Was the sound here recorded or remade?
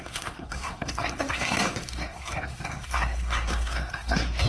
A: remade